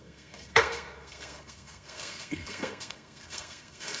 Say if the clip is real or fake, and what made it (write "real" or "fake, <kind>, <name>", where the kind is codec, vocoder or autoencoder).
fake, codec, SNAC